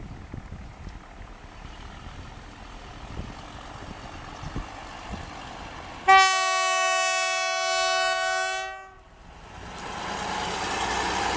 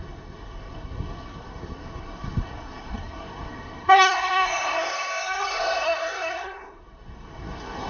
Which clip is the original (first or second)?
first